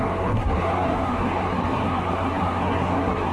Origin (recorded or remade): remade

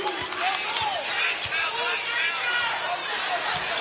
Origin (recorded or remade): recorded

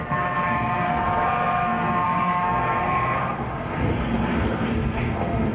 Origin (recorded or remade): remade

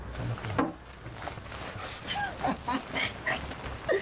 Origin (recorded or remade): recorded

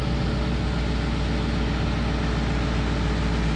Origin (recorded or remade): recorded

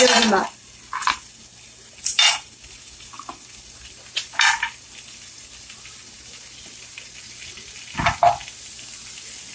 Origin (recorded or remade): recorded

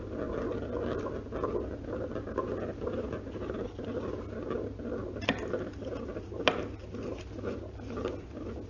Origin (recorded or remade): recorded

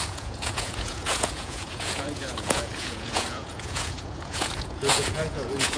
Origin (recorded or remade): remade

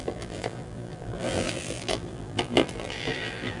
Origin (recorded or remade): remade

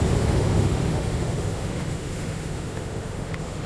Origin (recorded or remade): remade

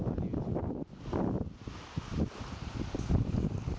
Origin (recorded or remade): recorded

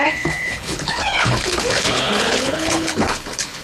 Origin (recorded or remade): remade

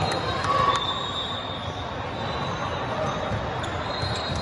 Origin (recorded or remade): remade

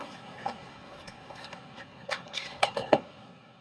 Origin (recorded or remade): remade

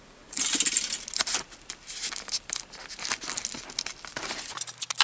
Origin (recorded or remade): recorded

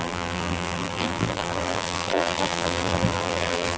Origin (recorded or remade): remade